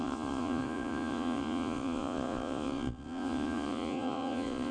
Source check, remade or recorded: remade